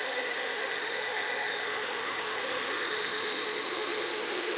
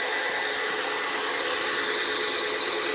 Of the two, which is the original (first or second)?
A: second